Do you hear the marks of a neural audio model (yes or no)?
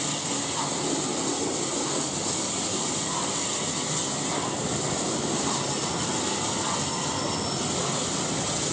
no